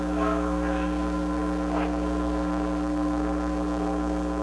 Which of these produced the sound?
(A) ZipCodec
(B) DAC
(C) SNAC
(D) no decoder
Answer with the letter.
C